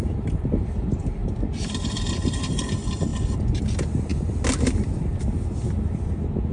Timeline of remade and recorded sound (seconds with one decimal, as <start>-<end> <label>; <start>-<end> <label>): 0.0-1.2 recorded; 1.2-2.5 remade; 2.5-6.5 recorded